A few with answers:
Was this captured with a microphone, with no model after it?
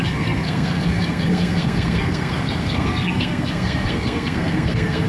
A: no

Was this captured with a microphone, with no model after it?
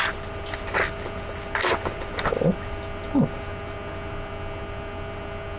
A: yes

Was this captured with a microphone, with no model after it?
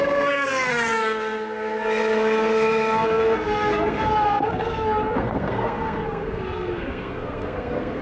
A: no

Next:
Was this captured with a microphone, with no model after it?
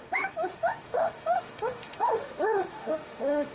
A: no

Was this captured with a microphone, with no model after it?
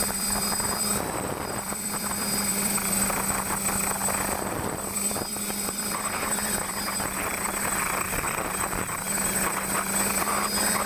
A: no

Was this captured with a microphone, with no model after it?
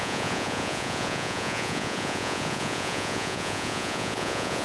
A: no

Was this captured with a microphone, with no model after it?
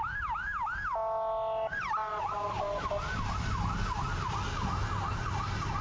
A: yes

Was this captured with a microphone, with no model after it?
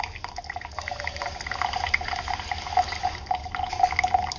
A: yes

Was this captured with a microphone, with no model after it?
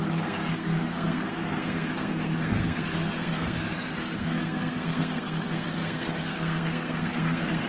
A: no